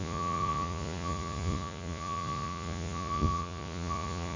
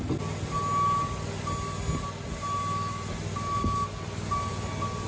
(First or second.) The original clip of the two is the second